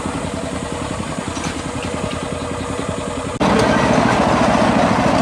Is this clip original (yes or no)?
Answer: yes